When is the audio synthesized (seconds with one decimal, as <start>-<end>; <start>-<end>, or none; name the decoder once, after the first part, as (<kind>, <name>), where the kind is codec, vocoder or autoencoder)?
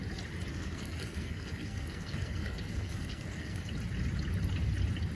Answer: 0.5-3.6 (codec, SNAC)